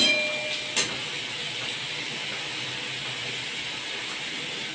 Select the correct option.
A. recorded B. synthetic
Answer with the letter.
A